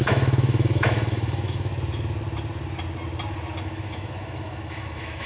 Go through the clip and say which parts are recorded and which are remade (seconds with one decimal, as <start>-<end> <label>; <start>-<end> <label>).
0.0-1.7 remade; 1.7-3.6 recorded; 3.6-5.3 remade